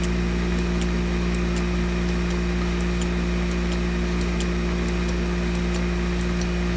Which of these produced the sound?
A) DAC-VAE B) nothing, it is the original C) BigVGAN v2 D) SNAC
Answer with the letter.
B